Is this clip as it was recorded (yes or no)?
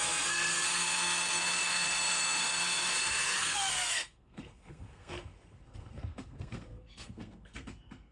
no